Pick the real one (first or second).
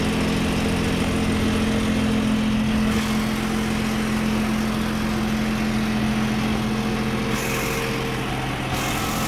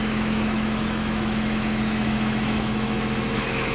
first